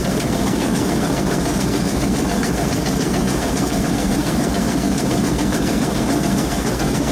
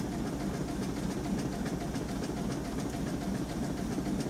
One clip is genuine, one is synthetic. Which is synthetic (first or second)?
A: first